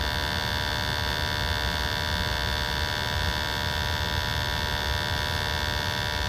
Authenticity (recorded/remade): recorded